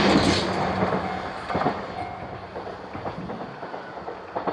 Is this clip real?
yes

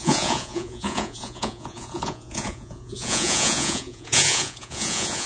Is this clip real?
no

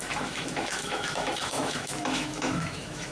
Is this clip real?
no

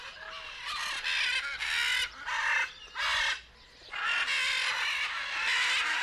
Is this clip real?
yes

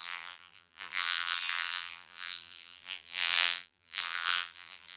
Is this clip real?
no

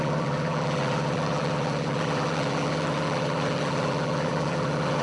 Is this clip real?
no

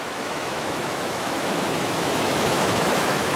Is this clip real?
no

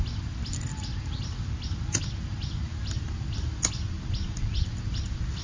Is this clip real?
yes